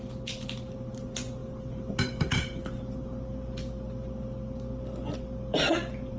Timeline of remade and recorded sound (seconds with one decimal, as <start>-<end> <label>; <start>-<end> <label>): 0.0-6.2 recorded